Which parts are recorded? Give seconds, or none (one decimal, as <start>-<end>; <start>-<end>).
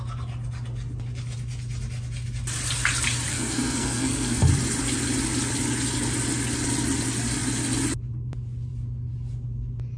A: 0.0-3.3; 4.5-10.0